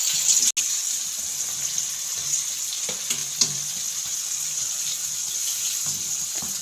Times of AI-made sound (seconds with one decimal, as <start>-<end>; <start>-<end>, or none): 1.3-1.9; 3.2-5.3